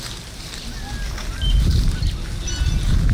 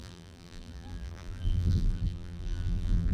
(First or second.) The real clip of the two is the first